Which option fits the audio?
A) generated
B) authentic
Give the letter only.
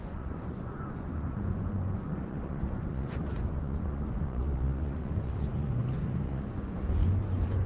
A